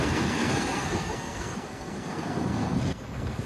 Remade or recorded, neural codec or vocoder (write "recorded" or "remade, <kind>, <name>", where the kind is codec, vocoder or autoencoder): remade, codec, SNAC